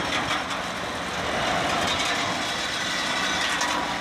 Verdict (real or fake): real